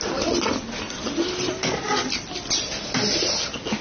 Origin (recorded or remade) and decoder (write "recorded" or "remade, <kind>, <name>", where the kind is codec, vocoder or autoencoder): recorded